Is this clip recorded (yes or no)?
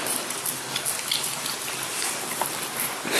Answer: yes